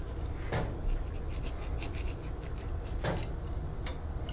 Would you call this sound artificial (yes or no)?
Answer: no